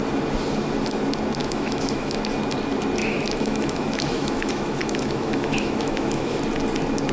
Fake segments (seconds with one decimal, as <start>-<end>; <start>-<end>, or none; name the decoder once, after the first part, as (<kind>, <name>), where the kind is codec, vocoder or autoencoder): 1.4-2.2 (autoencoder, DAC-VAE); 3.0-6.4